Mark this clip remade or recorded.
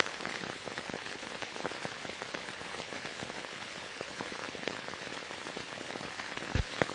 remade